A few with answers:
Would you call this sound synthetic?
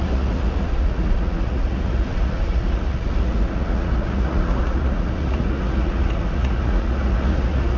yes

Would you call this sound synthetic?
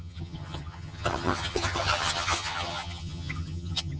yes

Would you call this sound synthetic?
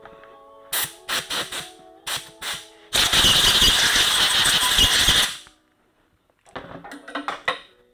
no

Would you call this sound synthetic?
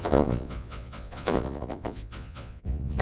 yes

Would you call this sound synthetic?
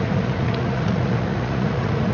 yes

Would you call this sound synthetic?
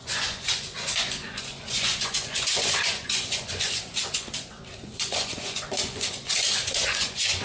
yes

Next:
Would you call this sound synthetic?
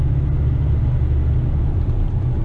no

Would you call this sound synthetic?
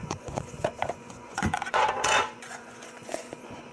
yes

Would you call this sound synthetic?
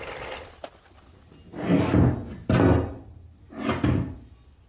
no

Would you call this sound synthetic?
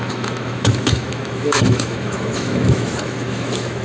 yes